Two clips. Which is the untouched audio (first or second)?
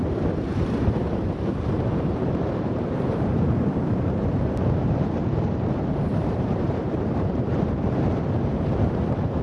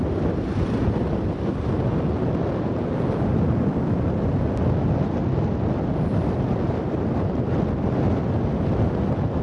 second